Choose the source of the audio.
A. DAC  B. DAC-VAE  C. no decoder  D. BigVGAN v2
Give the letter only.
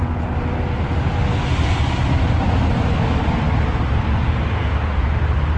C